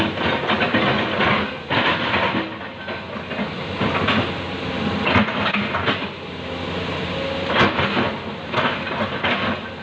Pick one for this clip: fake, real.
real